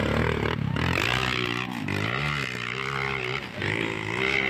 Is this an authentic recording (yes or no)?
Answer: yes